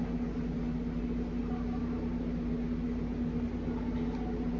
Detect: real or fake real